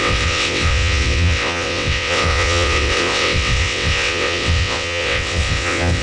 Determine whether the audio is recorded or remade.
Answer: remade